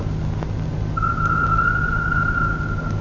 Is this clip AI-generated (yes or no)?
no